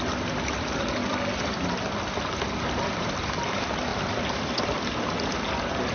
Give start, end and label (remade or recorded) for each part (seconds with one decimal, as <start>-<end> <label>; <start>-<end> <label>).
0.0-1.0 recorded; 1.0-3.3 remade; 3.3-3.9 recorded; 3.9-5.3 remade; 5.3-5.9 recorded